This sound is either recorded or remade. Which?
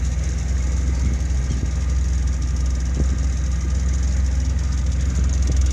recorded